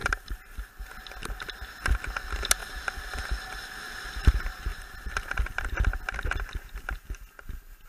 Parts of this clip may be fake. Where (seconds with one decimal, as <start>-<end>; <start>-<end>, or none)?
0.0-0.7; 2.6-4.3; 4.7-5.6